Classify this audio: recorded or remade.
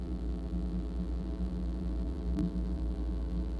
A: remade